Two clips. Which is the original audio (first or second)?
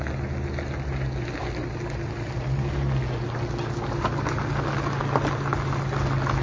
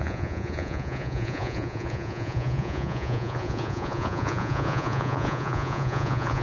first